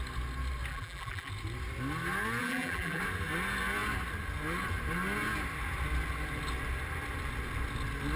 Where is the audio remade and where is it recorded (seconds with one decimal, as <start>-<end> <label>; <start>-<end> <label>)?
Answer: 0.0-0.7 recorded; 0.7-1.3 remade; 1.3-2.4 recorded; 2.4-3.0 remade; 3.0-8.2 recorded